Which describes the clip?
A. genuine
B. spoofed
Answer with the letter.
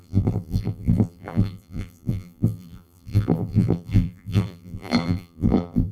B